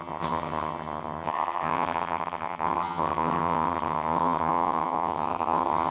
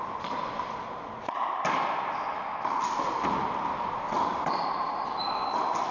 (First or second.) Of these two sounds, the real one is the second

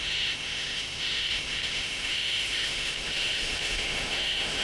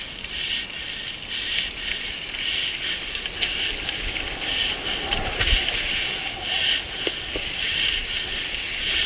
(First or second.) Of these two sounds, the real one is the second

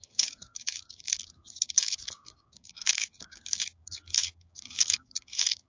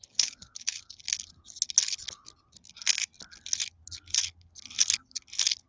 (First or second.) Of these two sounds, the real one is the second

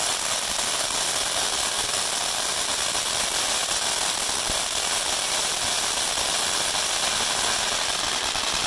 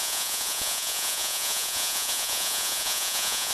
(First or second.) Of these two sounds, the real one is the first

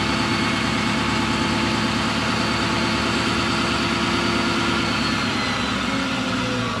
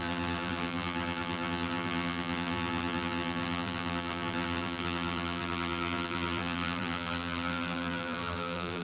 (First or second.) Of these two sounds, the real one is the first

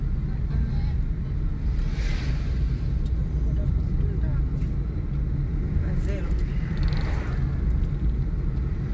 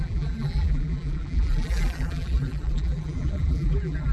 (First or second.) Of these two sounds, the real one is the first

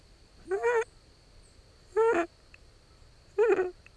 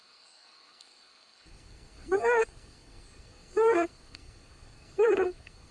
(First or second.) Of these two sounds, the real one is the first